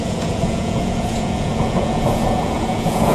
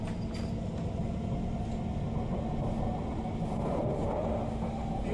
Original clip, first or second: second